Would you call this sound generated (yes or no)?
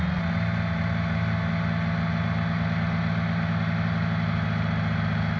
no